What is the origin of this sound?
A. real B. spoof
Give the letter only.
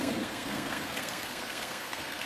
B